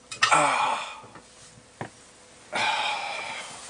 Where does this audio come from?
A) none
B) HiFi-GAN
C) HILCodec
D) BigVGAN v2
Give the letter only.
A